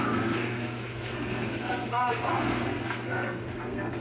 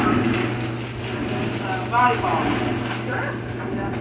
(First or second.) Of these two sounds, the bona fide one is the second